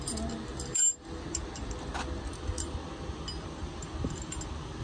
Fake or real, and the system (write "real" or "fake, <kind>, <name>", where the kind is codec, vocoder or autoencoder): real